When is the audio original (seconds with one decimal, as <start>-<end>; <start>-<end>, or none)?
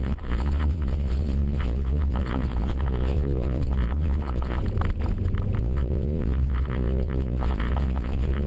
4.6-5.6